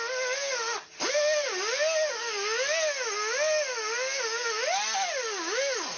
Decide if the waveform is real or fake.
real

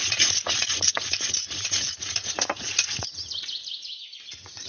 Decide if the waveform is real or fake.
fake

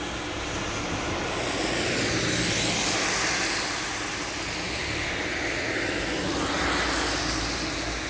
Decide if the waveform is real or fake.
real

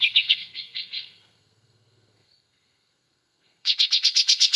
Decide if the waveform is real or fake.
fake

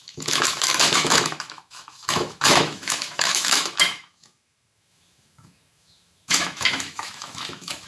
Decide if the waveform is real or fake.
fake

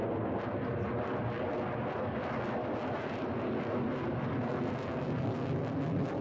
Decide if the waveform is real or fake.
real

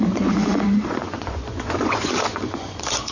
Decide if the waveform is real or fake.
fake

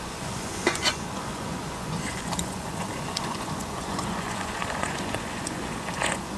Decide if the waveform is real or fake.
fake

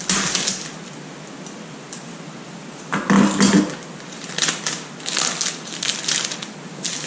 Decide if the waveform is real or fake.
real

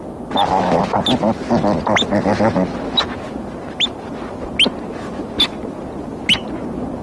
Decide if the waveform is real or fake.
real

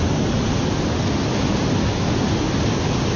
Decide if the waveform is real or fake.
real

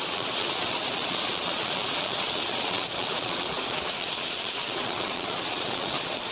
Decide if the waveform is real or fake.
fake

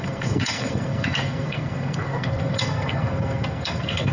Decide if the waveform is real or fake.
fake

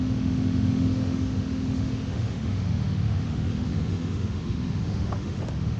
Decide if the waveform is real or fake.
fake